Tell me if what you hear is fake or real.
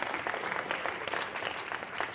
real